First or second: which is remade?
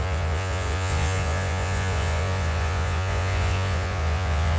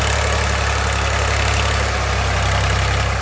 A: first